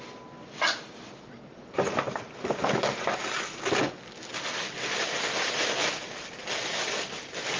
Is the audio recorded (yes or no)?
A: yes